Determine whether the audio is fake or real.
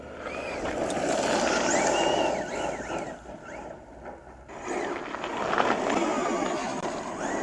real